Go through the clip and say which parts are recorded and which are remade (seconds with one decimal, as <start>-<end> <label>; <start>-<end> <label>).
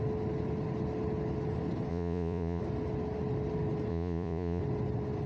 0.0-1.9 recorded; 1.9-2.6 remade; 2.6-3.9 recorded; 3.9-4.6 remade; 4.6-5.3 recorded